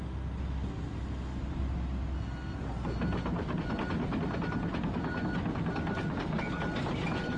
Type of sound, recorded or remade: recorded